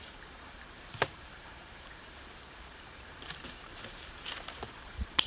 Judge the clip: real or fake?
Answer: fake